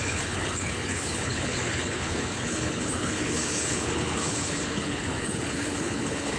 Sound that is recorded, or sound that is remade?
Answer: remade